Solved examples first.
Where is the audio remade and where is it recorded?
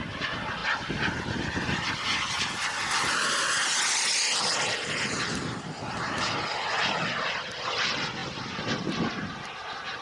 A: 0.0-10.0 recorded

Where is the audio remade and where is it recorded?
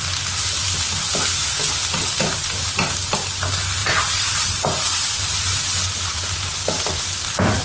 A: 0.0-3.8 recorded; 3.8-5.6 remade; 5.6-7.6 recorded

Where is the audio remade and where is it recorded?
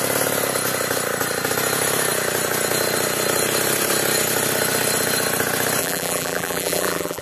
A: 0.0-5.8 recorded; 5.8-7.2 remade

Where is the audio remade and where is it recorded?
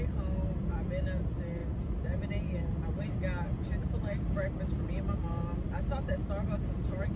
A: 0.0-7.2 recorded